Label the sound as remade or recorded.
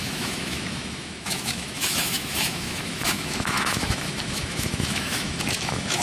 remade